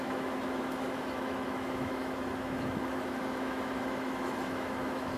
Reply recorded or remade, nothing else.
remade